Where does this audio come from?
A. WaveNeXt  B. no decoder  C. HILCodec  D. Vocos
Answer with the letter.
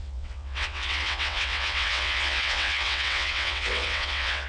A